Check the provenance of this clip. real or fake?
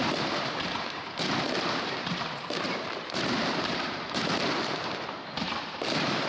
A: fake